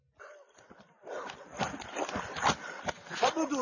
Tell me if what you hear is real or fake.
real